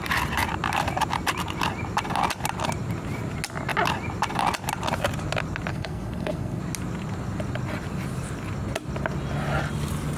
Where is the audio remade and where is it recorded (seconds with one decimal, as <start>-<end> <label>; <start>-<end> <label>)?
0.0-5.7 recorded; 5.7-6.6 remade; 6.6-10.2 recorded